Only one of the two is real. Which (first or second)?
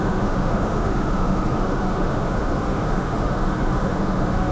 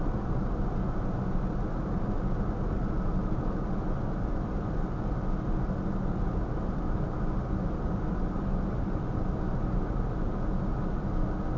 second